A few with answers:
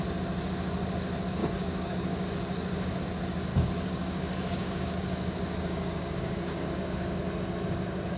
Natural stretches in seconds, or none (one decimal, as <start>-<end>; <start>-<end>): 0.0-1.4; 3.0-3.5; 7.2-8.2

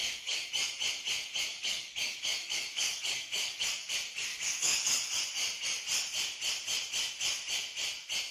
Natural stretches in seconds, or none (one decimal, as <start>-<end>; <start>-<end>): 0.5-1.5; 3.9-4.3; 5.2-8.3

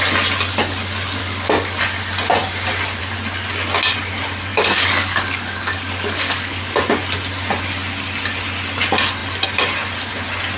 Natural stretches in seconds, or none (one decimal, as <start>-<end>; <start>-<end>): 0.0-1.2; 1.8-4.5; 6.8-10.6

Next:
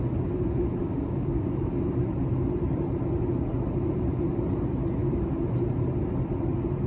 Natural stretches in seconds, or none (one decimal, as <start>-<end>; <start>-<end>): 0.0-0.8; 1.5-6.9

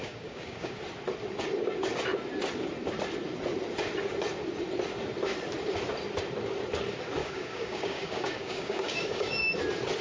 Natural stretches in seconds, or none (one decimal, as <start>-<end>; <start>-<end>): 0.8-7.2; 9.5-10.0

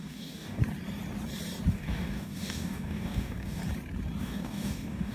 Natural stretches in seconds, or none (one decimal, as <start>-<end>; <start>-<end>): 0.6-1.7; 3.6-4.2

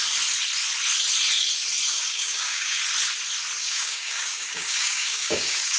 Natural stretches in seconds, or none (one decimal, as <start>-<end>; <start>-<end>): 0.0-1.9; 2.8-3.6

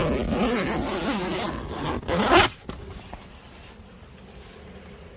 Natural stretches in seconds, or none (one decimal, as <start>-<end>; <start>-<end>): 0.0-5.2